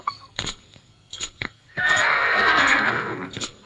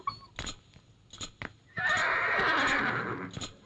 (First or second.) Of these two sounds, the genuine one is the second